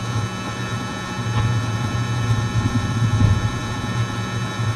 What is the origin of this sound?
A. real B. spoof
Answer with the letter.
B